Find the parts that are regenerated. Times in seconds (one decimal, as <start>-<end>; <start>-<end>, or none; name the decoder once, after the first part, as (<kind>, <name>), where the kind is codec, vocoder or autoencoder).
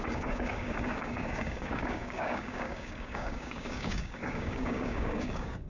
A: 0.0-5.7 (codec, DAC)